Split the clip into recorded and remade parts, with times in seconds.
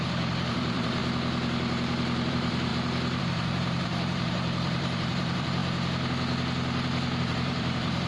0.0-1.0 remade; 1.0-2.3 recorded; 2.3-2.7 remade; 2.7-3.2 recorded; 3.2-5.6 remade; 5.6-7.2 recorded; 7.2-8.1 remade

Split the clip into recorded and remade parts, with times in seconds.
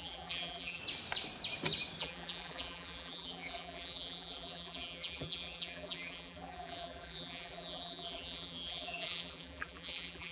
0.0-0.8 remade; 0.8-2.0 recorded; 2.0-10.3 remade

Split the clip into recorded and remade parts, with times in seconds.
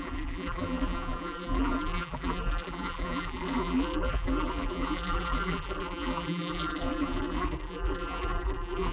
0.0-8.9 remade